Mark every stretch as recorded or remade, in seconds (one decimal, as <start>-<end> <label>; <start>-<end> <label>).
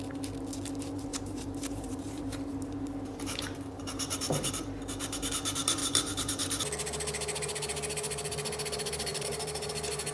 0.0-1.1 recorded; 1.1-4.5 remade; 4.5-5.8 recorded; 5.8-6.6 remade; 6.6-9.1 recorded; 9.1-9.7 remade; 9.7-10.1 recorded